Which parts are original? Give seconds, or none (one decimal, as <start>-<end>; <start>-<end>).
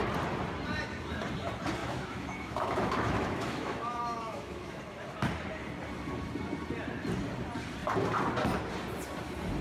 0.0-1.8; 4.8-9.6